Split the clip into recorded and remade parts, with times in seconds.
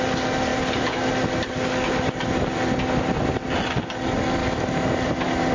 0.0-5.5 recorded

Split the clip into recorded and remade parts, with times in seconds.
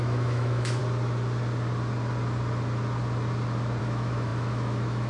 0.0-0.8 remade; 0.8-3.8 recorded; 3.8-5.1 remade